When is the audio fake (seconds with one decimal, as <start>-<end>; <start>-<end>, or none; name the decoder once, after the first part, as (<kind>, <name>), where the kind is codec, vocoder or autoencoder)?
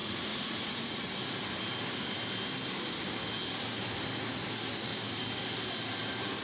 0.0-1.1 (vocoder, Vocos)